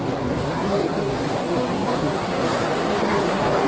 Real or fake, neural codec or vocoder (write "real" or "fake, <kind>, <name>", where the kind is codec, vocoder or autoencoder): fake, codec, SNAC